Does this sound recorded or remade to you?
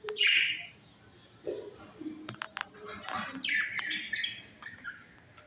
recorded